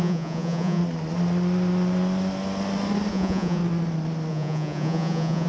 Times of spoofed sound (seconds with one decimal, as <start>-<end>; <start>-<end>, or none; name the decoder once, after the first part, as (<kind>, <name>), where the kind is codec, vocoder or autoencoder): 0.0-0.8 (vocoder, Vocos); 3.1-3.6; 4.3-5.5